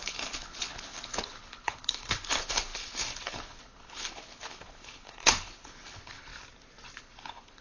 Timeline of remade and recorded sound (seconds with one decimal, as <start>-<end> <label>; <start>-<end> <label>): 0.0-6.3 remade; 6.3-7.0 recorded; 7.0-7.6 remade